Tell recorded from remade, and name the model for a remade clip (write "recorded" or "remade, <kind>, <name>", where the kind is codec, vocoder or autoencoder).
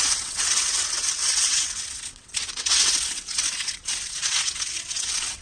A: remade, vocoder, WaveNeXt